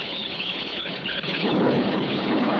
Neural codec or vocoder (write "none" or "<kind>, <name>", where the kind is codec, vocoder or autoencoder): codec, HILCodec